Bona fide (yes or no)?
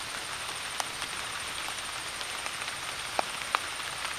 yes